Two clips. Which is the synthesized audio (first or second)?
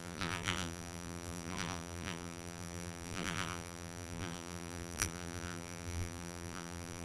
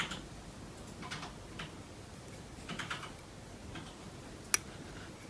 first